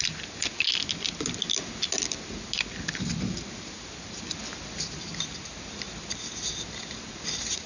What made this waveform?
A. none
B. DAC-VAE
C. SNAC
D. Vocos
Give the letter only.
A